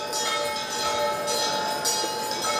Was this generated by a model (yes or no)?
no